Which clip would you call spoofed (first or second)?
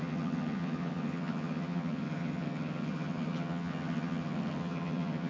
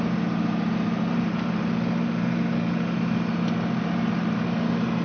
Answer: first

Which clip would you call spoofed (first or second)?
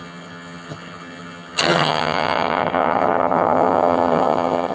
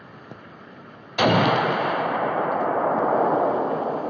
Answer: first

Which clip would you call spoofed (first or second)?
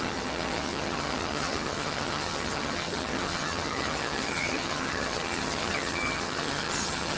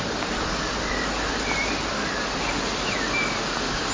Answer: first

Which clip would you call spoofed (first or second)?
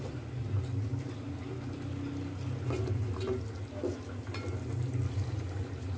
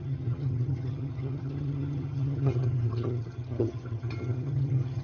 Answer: second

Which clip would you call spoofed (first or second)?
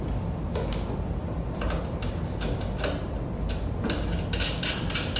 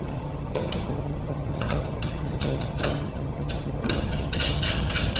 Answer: second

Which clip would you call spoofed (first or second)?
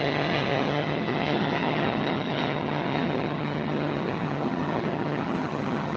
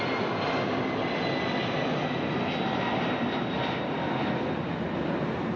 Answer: first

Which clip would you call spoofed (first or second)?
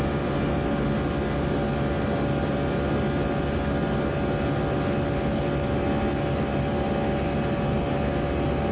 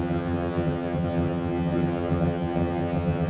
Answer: second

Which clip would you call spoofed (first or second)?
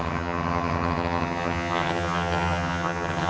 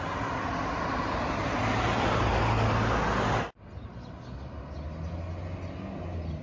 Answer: first